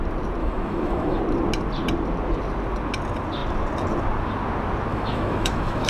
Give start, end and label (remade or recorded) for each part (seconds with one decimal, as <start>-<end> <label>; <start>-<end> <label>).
0.0-0.4 recorded; 0.4-1.2 remade; 1.2-4.9 recorded; 4.9-5.9 remade